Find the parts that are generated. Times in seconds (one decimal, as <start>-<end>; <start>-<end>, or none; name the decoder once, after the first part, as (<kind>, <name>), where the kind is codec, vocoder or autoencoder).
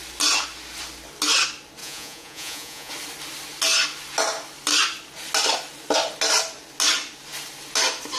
1.8-2.9 (vocoder, Vocos)